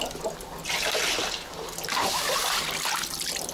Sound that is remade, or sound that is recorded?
recorded